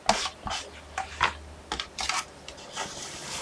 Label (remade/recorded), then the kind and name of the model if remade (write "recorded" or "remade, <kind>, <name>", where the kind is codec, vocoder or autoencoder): recorded